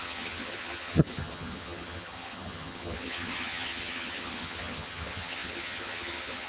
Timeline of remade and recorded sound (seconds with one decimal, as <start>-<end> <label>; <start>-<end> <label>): 0.0-6.5 remade